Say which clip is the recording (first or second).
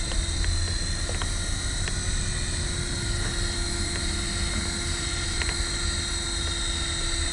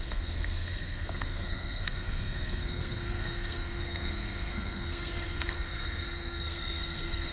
first